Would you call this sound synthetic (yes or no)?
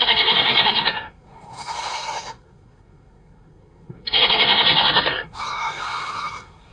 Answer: yes